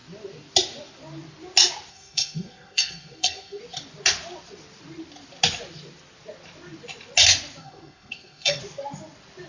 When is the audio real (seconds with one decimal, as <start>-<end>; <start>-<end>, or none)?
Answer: 0.0-1.9; 3.6-7.6; 8.6-9.5